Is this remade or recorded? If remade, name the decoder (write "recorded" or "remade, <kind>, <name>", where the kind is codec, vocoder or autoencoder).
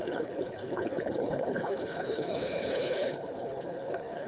remade, codec, HILCodec